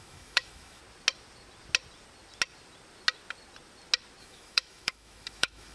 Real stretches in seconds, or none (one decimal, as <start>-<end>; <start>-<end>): 0.8-4.2

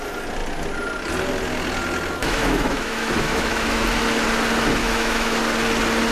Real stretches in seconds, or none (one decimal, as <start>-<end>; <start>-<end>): 0.0-2.2; 3.8-4.8; 5.4-6.1

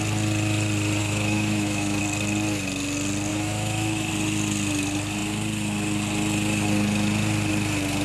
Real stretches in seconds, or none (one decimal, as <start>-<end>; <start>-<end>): 0.0-1.0; 2.0-3.3; 4.1-8.0